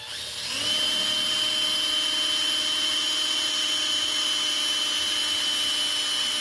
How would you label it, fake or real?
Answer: real